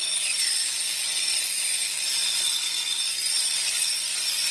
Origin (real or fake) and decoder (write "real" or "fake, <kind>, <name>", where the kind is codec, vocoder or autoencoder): real